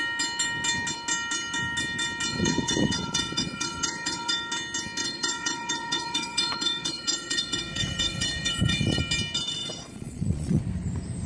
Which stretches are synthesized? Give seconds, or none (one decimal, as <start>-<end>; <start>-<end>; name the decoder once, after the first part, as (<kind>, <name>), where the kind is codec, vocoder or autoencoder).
2.3-4.3 (vocoder, Vocos); 5.0-9.0; 9.6-10.6